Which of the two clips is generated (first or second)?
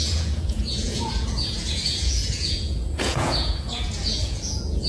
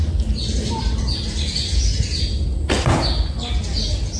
first